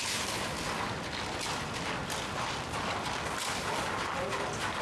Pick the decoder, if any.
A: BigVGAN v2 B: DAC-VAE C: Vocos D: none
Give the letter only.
D